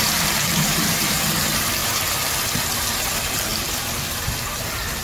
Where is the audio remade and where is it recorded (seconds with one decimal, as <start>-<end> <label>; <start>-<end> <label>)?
0.0-1.8 remade; 1.8-2.7 recorded; 2.7-3.5 remade; 3.5-5.0 recorded